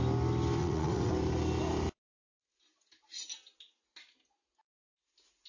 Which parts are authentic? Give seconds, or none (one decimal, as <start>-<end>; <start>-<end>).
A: 0.0-0.6; 1.1-5.5